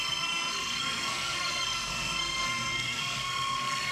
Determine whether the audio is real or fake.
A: fake